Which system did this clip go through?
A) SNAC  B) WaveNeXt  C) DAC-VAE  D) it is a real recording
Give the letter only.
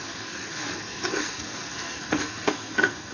A